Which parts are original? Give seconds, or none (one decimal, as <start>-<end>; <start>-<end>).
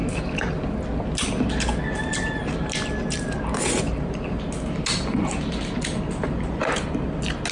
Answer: 0.0-7.5